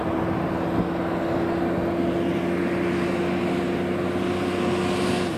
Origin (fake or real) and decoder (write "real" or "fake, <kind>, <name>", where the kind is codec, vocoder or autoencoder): real